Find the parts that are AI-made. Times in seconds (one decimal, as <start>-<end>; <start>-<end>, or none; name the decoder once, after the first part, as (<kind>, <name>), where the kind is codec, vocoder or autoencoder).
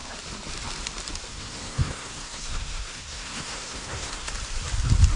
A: 1.3-4.3 (codec, SNAC)